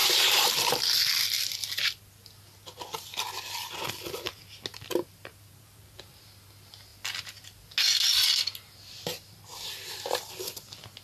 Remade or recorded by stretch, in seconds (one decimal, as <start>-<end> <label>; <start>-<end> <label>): 0.0-0.9 remade; 0.9-4.7 recorded; 4.7-6.2 remade; 6.2-11.0 recorded